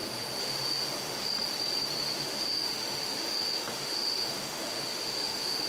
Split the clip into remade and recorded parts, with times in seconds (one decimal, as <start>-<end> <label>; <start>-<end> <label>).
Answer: 0.0-1.3 remade; 1.3-2.2 recorded; 2.2-5.7 remade